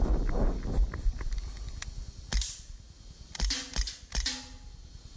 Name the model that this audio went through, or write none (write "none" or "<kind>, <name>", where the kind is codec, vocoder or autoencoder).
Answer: none